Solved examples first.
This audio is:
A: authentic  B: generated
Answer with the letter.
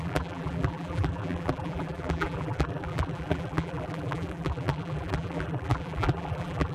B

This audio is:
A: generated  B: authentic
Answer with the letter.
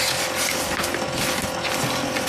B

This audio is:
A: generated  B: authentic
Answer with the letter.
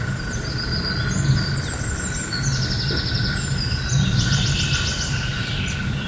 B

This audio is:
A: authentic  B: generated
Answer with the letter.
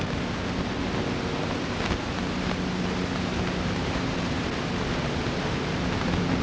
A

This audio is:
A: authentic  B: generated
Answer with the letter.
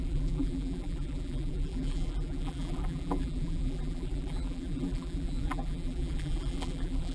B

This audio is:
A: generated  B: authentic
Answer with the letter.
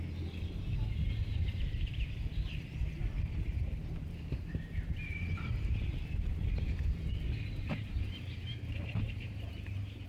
A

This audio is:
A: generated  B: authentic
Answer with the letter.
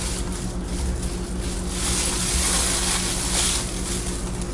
B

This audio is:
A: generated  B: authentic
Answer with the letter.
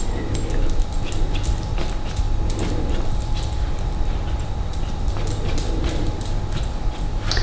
A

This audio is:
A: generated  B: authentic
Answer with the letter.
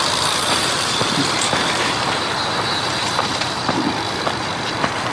A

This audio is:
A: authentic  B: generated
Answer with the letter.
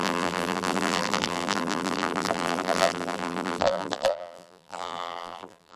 B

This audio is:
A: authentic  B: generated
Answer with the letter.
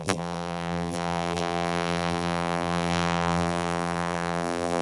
B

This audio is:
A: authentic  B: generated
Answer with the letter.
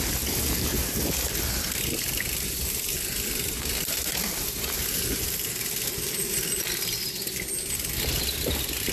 A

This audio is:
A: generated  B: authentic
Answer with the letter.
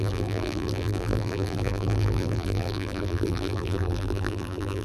A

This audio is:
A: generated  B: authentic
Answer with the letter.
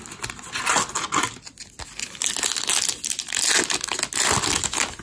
B